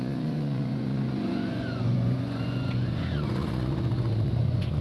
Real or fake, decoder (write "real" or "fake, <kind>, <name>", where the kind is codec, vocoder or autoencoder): fake, vocoder, Vocos